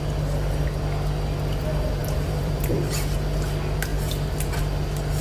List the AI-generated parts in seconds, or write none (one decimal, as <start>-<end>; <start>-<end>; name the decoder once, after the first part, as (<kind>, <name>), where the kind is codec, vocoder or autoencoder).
2.0-2.7 (vocoder, BigVGAN v2)